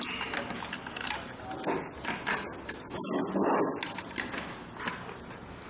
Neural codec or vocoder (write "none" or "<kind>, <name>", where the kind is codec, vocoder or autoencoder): none